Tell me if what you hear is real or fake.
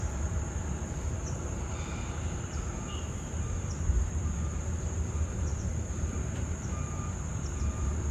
fake